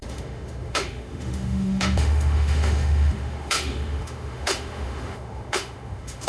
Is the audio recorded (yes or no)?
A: no